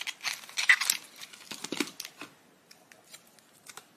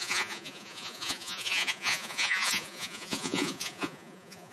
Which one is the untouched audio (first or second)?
first